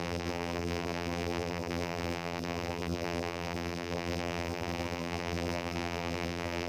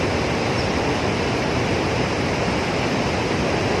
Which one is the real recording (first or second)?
second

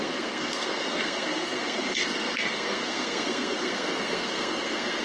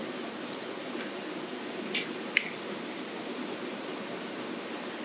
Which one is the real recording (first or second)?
second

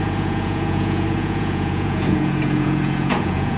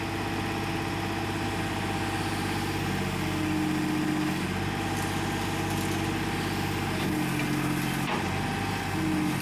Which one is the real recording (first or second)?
second